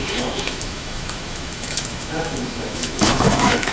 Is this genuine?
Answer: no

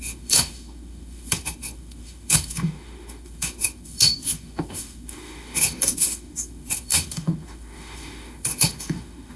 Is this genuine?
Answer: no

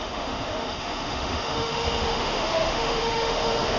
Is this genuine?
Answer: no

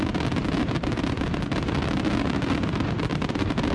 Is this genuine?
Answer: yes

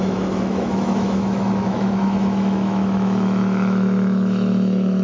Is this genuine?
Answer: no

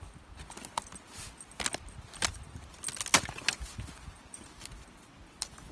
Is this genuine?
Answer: yes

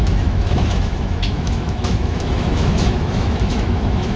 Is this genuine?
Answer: no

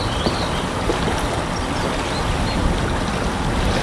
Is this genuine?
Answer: yes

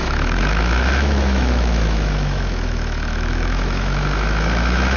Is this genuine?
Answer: no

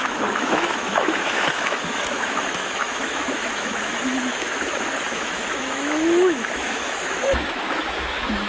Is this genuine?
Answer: no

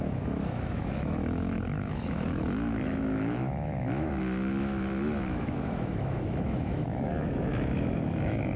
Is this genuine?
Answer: no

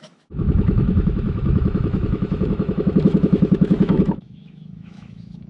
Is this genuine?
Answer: no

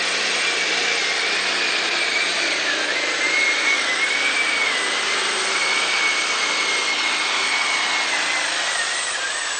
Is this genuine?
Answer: yes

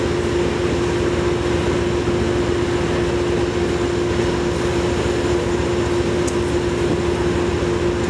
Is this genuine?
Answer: yes